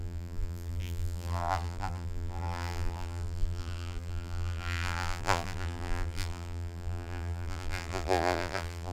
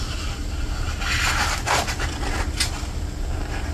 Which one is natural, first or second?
second